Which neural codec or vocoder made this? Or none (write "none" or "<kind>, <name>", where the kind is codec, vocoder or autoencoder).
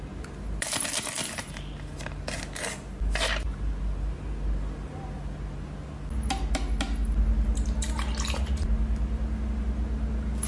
none